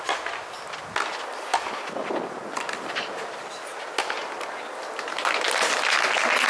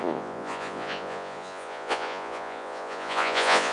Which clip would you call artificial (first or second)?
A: second